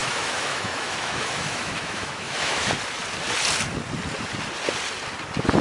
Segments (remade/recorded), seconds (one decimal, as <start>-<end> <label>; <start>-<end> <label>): 0.0-2.7 remade; 2.7-5.6 recorded